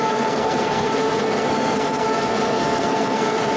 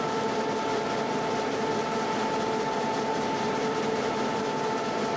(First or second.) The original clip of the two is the second